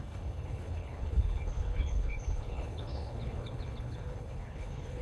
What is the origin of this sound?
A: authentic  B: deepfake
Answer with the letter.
B